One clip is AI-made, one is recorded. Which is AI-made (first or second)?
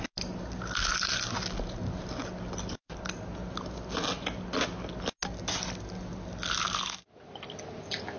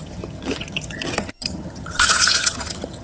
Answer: second